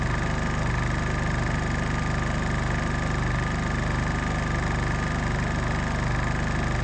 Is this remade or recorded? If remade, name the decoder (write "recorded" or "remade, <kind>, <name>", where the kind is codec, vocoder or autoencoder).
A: recorded